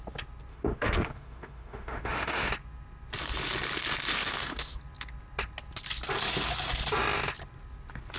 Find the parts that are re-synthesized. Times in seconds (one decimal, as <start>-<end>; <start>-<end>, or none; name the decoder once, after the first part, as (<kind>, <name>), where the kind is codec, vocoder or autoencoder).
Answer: 0.5-2.5 (autoencoder, DAC-VAE); 4.1-4.8

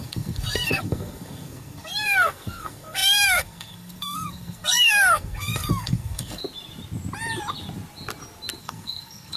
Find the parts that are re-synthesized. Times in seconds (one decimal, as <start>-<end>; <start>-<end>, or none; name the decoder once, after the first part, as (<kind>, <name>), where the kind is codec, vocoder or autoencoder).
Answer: 0.0-6.4 (codec, SNAC); 8.6-9.4